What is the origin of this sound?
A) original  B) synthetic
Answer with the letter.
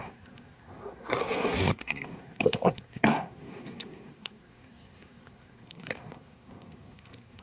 B